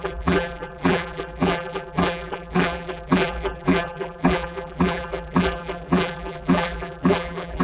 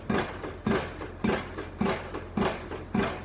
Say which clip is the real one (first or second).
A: second